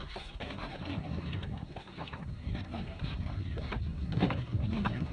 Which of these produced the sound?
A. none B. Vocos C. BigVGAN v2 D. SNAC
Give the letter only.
D